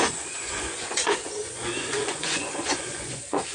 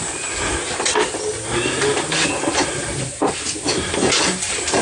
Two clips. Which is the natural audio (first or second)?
second